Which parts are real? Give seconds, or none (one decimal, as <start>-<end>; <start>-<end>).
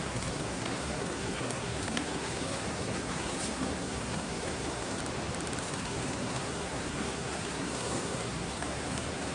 5.0-5.6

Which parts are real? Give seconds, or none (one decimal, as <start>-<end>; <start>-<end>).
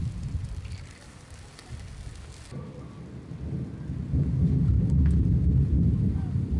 0.0-6.6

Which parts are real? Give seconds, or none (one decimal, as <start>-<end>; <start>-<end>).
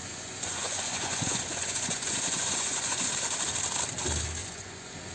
3.1-4.4